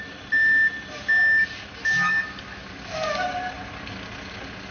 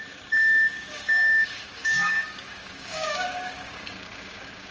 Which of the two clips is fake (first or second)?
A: second